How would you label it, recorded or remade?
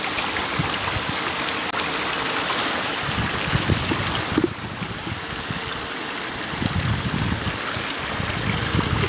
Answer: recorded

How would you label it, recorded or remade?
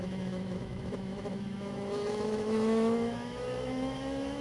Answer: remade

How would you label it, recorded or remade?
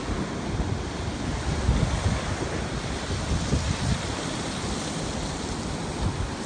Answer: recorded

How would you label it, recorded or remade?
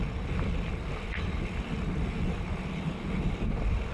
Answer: recorded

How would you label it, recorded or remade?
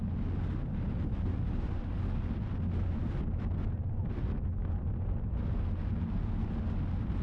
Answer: recorded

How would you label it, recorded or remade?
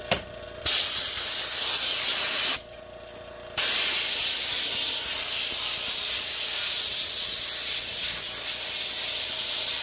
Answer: recorded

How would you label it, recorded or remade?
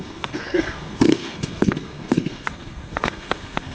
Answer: remade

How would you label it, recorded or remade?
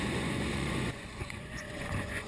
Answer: remade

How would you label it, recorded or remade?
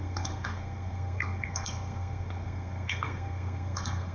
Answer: remade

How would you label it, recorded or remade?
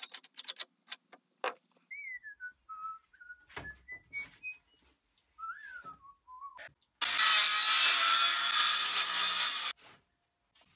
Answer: recorded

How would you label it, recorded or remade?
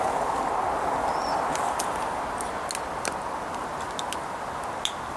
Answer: recorded